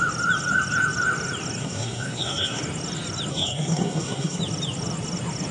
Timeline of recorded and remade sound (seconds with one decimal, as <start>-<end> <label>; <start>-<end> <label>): 0.0-1.6 recorded; 1.6-2.6 remade; 2.6-3.3 recorded; 3.3-4.4 remade; 4.4-5.5 recorded